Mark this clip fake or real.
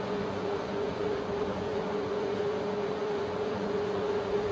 fake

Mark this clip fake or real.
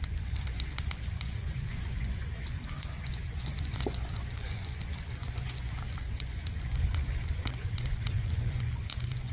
fake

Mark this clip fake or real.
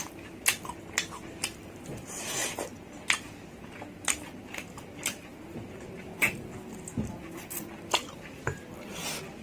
real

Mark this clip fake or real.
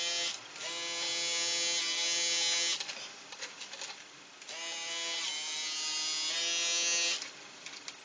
real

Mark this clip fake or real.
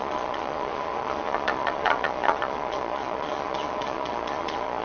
fake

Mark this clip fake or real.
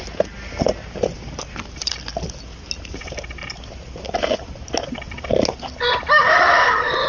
real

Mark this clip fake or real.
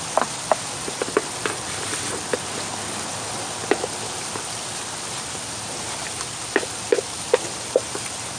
real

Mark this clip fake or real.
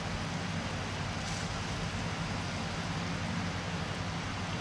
real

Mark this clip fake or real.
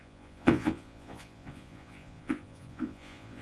fake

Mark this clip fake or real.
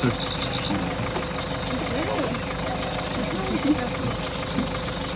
real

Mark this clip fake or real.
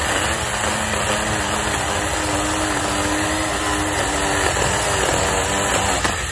real